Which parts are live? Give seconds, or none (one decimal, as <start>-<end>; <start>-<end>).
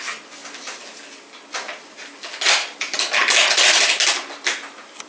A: 0.0-5.1